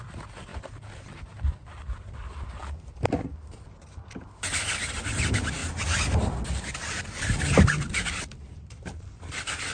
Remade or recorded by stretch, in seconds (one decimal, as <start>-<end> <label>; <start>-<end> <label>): 0.0-0.5 remade; 0.5-1.2 recorded; 1.2-2.6 remade; 2.6-5.1 recorded; 5.1-5.6 remade; 5.6-7.9 recorded; 7.9-9.7 remade